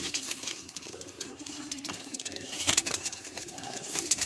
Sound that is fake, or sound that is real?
fake